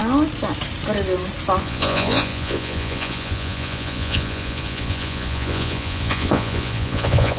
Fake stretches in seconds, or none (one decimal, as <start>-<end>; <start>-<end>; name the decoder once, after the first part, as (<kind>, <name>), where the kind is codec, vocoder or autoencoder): 1.6-7.4 (vocoder, Vocos)